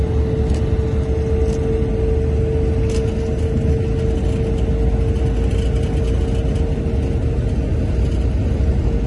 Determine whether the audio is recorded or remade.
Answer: recorded